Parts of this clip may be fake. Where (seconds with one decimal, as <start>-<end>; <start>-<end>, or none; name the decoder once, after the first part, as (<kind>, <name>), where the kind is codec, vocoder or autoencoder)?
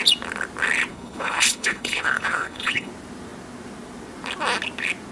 0.9-2.9 (codec, HILCodec)